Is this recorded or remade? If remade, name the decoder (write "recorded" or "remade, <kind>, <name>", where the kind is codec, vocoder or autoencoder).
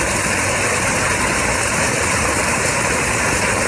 recorded